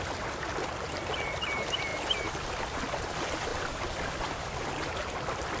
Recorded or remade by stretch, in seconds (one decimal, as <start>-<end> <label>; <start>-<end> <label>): 0.0-5.6 recorded